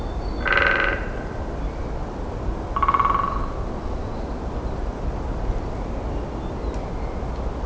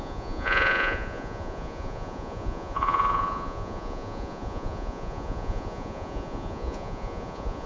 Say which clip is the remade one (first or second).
second